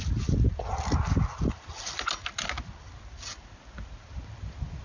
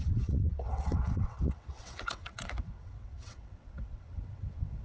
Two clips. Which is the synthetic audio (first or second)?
second